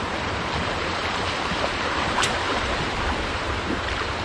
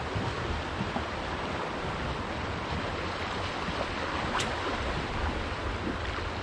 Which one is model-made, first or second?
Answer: first